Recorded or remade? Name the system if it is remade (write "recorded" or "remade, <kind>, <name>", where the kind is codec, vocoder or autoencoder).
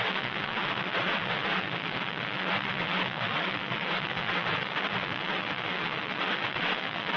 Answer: remade, vocoder, WaveNeXt